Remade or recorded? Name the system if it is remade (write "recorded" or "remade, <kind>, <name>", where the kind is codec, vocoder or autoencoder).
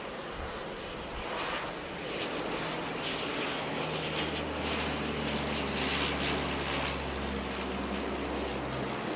recorded